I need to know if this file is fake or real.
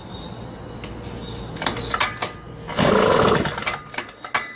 real